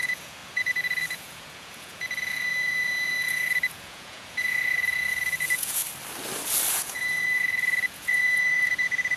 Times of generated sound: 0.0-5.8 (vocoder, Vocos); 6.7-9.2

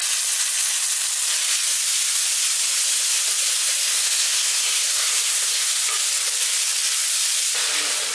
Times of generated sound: 3.8-5.7 (codec, SNAC)

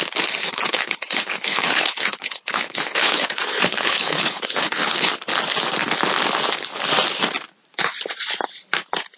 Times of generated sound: 0.4-5.1 (codec, HILCodec)